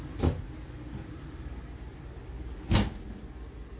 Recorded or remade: recorded